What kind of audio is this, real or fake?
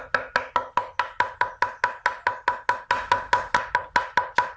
real